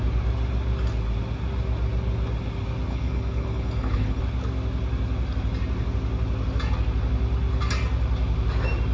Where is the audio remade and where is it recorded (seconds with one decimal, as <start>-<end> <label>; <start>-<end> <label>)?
0.0-2.9 recorded; 2.9-4.2 remade; 4.2-8.9 recorded